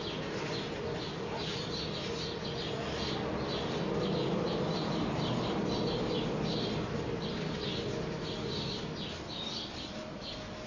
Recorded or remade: recorded